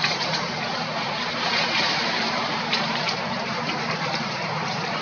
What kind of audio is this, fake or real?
fake